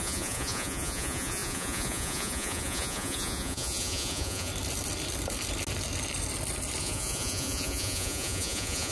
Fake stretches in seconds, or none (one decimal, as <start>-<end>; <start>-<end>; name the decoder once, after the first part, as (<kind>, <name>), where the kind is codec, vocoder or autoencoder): 0.0-4.5 (vocoder, Vocos); 6.8-8.9